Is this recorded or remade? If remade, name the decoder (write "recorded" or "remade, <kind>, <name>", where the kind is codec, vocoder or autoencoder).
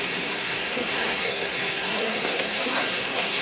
remade, codec, SNAC